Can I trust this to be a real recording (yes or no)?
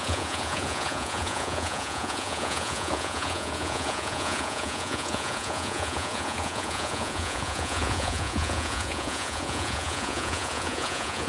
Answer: no